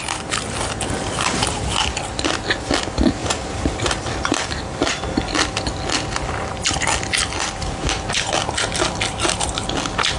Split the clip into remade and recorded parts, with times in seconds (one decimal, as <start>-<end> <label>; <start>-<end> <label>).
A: 0.0-3.2 recorded; 3.2-5.0 remade; 5.0-10.2 recorded